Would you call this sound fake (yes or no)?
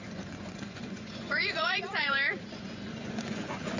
yes